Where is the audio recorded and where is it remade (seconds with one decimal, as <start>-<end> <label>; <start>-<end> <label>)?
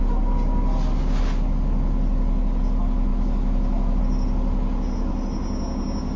0.0-3.1 recorded; 3.1-4.0 remade; 4.0-6.2 recorded